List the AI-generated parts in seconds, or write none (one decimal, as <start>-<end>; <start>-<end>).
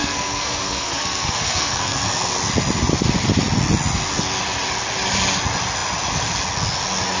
0.0-2.0